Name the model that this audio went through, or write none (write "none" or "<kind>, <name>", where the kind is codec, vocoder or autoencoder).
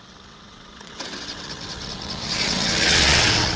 vocoder, WaveNeXt